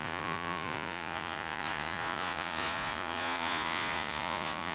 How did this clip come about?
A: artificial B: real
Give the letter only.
A